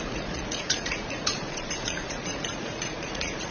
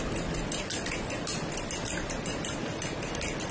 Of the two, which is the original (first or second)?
second